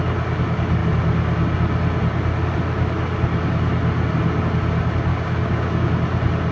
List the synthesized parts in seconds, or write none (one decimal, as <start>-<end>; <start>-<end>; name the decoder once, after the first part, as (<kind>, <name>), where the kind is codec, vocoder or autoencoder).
5.1-5.9 (codec, DAC)